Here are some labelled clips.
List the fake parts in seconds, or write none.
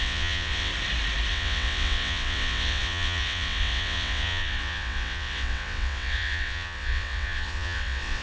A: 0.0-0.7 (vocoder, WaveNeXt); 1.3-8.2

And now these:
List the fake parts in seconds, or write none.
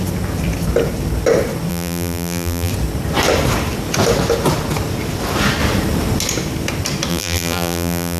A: 1.7-2.7 (vocoder, BigVGAN v2); 7.1-8.2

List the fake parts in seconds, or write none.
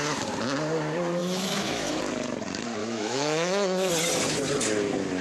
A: 1.2-2.0 (autoencoder, DAC-VAE); 2.8-3.9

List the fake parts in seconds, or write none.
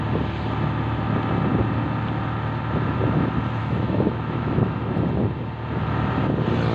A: 3.6-4.6 (autoencoder, DAC-VAE)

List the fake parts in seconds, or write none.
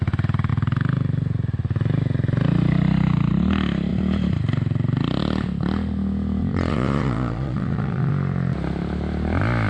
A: 6.4-8.1 (vocoder, Vocos)